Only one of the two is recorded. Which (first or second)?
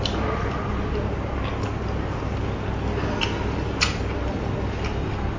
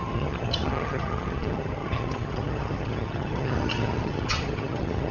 first